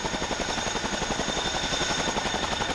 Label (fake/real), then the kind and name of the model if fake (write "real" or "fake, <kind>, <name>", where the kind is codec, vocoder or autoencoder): real